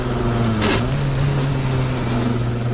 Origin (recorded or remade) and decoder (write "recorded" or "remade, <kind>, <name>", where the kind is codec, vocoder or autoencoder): recorded